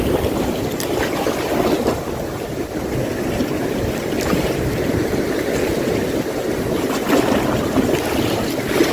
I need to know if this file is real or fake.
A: real